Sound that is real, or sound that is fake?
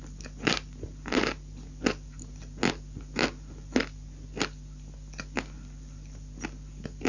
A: real